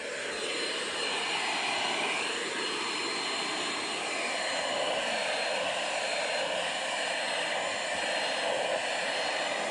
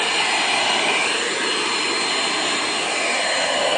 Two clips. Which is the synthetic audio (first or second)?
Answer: first